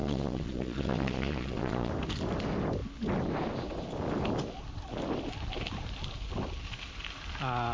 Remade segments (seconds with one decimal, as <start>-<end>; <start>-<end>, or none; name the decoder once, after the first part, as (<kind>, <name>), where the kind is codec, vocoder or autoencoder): 0.0-1.9 (vocoder, Vocos)